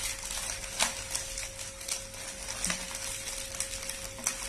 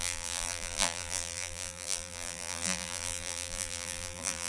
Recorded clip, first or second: first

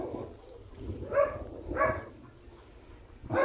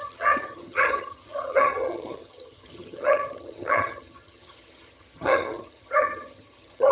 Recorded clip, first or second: first